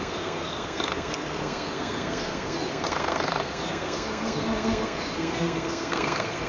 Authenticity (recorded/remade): remade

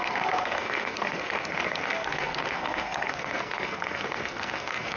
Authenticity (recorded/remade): remade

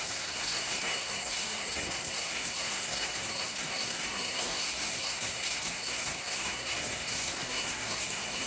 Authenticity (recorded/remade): remade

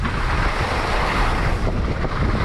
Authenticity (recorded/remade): recorded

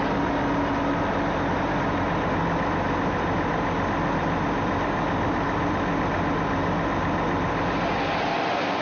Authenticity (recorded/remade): recorded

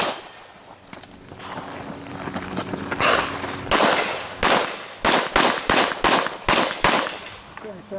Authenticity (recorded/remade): recorded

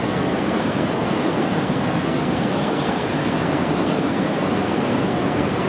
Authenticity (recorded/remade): remade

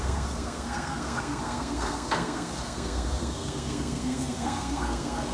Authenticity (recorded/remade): remade